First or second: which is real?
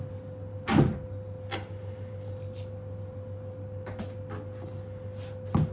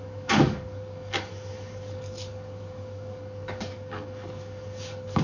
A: first